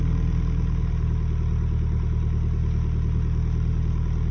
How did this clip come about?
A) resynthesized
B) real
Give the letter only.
B